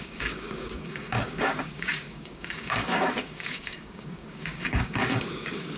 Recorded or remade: remade